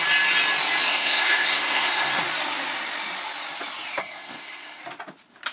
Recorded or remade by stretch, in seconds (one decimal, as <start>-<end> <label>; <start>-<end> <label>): 0.0-0.9 recorded; 0.9-2.2 remade; 2.2-4.0 recorded; 4.0-4.8 remade; 4.8-5.5 recorded